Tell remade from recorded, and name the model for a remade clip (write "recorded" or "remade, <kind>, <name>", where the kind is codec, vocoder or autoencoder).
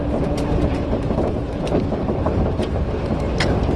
remade, vocoder, BigVGAN v2